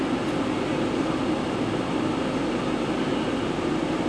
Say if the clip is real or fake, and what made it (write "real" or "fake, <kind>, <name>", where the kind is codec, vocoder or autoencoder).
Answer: real